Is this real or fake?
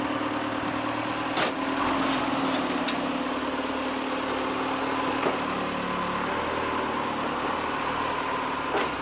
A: real